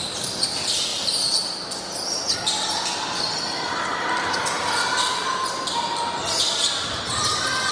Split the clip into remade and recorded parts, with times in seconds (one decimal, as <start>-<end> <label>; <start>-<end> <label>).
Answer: 0.0-7.7 recorded